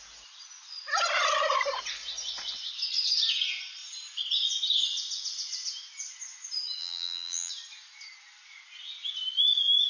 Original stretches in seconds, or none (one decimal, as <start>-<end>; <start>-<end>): 0.0-6.8; 7.5-9.9